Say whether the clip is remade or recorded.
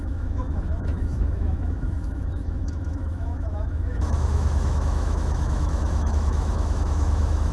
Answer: remade